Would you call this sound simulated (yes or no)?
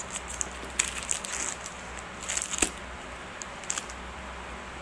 no